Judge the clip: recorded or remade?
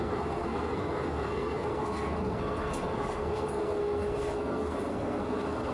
remade